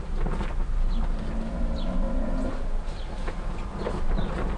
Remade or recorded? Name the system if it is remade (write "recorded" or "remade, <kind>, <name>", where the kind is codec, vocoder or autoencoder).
recorded